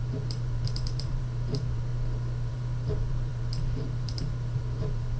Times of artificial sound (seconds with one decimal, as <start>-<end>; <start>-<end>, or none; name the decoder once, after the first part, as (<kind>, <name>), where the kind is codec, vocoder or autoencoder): 0.0-1.9 (vocoder, BigVGAN v2); 2.5-5.2